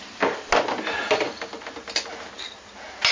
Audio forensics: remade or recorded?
recorded